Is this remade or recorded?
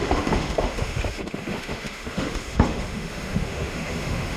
remade